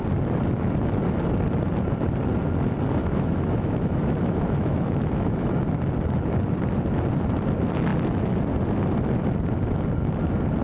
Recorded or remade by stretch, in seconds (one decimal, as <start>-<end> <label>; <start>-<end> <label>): 0.0-3.0 recorded; 3.0-5.5 remade; 5.5-10.6 recorded